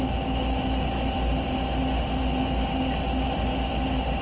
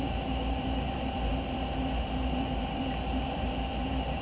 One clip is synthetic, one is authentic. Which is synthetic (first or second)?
second